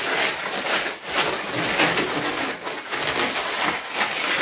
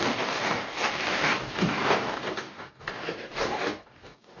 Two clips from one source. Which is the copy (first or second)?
second